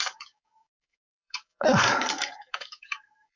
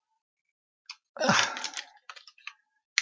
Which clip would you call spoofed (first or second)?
first